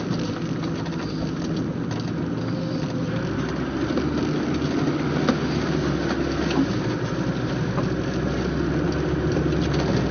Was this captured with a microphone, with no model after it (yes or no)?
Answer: yes